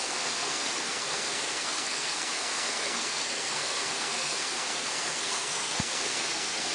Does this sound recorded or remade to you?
remade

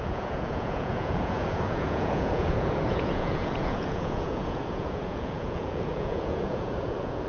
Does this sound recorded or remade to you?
remade